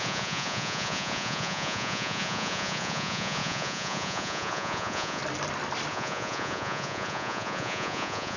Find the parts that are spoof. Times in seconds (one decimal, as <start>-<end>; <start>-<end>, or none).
0.0-5.2; 5.9-8.4